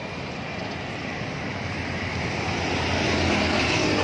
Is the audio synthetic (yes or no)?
no